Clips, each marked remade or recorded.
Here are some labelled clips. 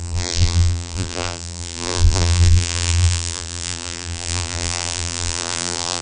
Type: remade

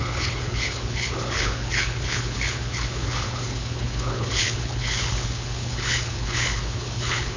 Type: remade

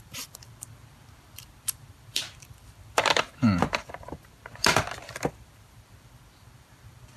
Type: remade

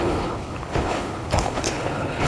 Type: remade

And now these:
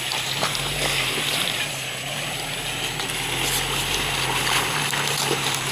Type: recorded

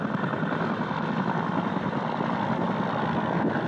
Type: recorded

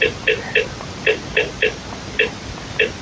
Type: recorded